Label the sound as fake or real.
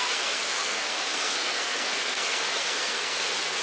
fake